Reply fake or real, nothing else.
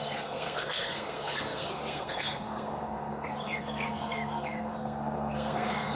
fake